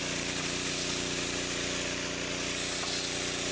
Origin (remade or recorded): recorded